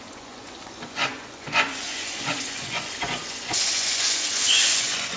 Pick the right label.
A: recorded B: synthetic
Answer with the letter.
B